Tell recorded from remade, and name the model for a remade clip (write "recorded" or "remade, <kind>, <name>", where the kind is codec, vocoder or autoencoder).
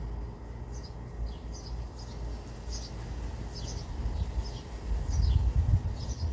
recorded